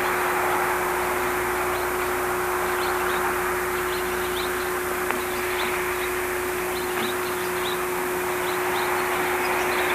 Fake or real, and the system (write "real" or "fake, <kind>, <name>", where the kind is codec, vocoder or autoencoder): real